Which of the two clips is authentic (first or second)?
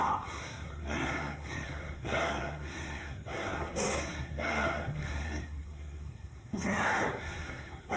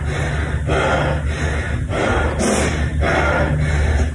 second